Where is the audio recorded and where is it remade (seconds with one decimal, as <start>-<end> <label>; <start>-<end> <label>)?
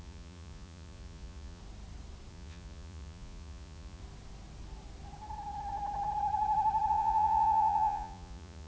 0.0-1.6 remade; 1.6-2.3 recorded; 2.3-4.0 remade; 4.0-6.9 recorded; 6.9-8.7 remade